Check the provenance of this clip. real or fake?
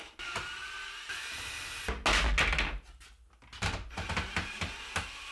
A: real